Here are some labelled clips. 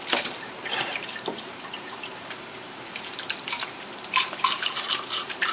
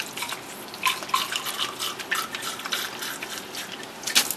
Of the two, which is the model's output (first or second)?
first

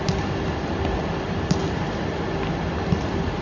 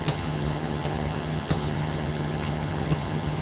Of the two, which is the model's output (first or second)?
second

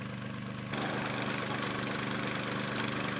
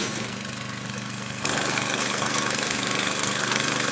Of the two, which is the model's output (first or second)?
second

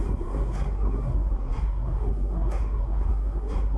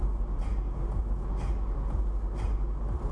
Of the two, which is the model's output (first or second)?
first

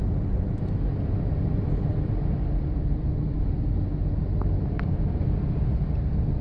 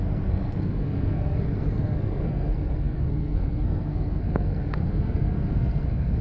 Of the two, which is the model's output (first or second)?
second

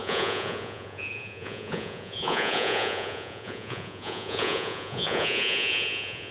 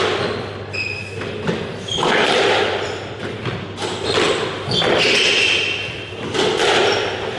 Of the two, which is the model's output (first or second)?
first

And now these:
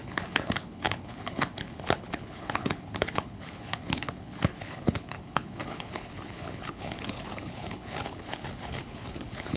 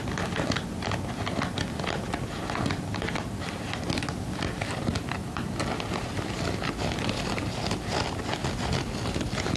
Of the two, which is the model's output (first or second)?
first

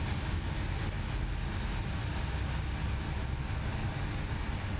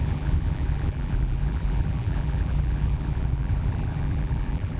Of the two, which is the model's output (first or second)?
second